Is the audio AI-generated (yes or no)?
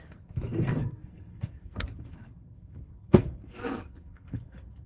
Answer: yes